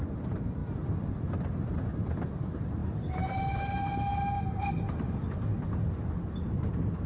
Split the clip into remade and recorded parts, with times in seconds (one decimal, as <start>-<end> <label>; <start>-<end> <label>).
0.0-2.8 recorded; 2.8-3.5 remade; 3.5-7.1 recorded